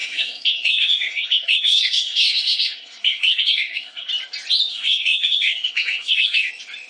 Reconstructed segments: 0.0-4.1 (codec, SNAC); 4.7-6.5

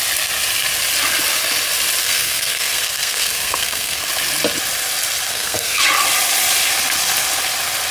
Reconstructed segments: 2.0-4.1 (codec, SNAC); 5.3-5.8

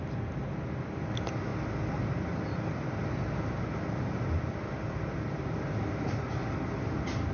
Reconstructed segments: none

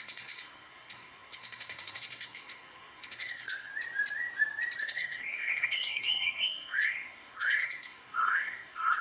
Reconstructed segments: 0.0-3.7 (codec, SNAC); 4.8-9.0

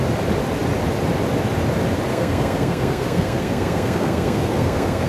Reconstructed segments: 2.1-5.1 (codec, SNAC)

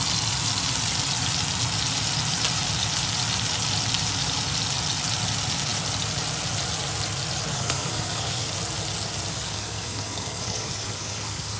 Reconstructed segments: 7.5-8.5 (codec, SNAC); 9.3-11.6

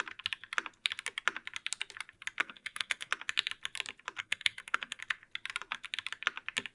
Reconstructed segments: 2.4-3.1 (codec, SNAC); 4.2-5.0